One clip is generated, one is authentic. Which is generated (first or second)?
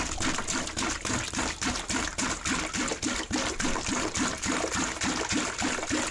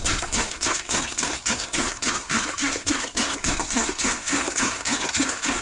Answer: second